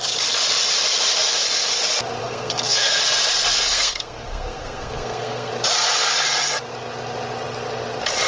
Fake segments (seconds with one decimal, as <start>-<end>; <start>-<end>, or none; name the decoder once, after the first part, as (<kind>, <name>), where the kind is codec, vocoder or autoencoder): 2.2-3.0 (codec, SNAC); 3.7-5.5